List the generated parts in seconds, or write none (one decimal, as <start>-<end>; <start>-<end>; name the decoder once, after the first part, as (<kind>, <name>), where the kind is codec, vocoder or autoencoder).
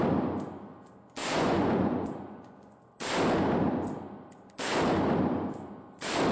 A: 1.2-2.8 (vocoder, Vocos)